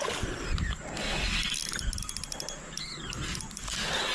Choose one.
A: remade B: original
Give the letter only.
B